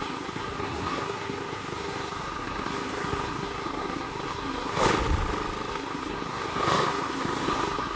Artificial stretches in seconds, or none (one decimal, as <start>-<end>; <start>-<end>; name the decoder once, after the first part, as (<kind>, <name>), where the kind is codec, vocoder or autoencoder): 0.0-4.8 (codec, SNAC); 5.7-8.0